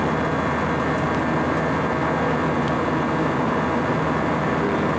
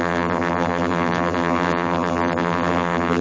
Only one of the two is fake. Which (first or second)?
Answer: second